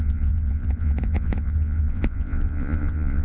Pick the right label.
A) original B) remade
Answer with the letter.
B